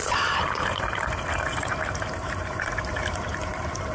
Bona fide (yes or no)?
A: no